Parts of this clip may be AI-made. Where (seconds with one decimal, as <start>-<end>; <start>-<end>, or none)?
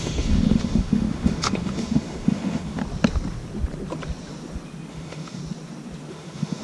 0.0-2.8; 4.9-5.4; 6.1-6.6